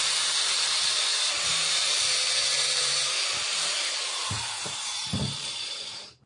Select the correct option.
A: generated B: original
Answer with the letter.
A